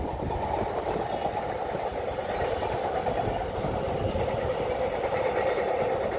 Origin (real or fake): real